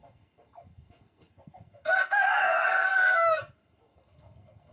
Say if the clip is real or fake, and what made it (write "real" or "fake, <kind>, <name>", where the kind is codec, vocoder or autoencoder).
fake, codec, SNAC